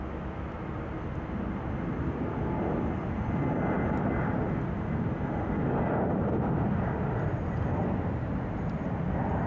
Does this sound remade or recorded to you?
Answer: recorded